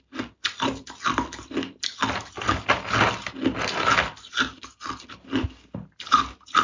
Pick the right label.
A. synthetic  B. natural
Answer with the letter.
B